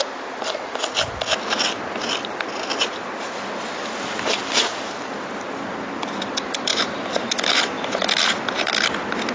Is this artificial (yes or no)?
no